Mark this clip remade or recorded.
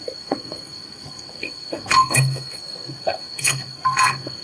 remade